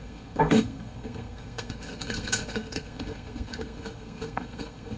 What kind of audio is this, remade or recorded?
remade